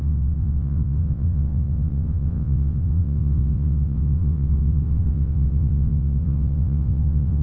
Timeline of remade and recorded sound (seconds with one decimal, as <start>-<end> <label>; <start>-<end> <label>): 0.0-7.4 remade